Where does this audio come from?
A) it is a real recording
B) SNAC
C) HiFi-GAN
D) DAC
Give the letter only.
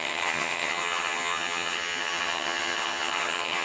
C